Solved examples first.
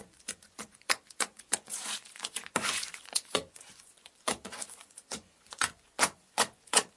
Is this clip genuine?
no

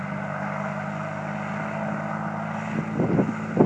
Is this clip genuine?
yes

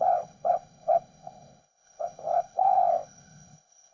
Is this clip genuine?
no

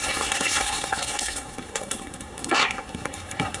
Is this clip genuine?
no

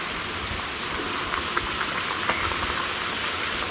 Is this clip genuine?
yes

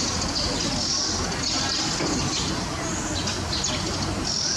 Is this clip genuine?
yes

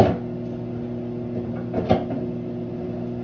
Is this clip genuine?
yes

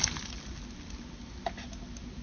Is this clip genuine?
yes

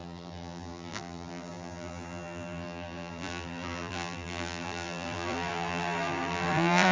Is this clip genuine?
no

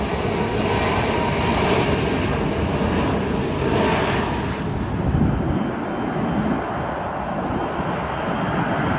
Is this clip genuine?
yes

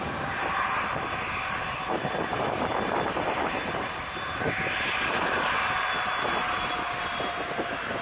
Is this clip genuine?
yes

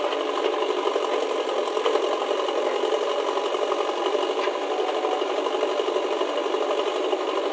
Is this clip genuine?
yes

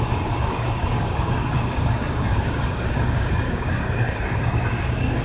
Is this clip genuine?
no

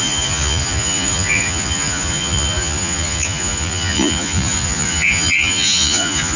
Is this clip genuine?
no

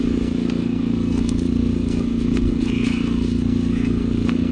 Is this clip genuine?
no